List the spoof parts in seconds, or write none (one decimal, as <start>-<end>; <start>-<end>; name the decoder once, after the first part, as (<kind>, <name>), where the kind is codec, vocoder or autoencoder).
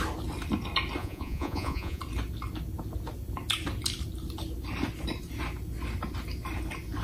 1.0-2.0 (vocoder, Vocos)